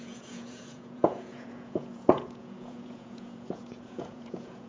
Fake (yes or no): yes